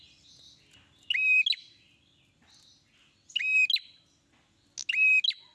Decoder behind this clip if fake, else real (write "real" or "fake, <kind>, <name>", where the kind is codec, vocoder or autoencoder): real